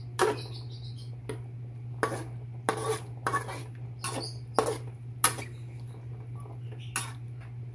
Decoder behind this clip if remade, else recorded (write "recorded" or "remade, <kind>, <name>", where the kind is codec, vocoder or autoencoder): recorded